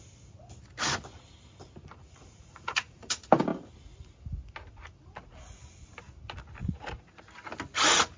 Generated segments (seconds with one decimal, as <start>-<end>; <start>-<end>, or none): 2.0-3.1; 6.6-7.2